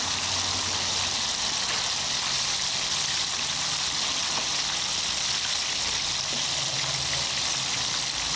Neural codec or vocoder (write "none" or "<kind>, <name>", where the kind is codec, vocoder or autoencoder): none